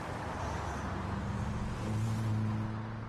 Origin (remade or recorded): recorded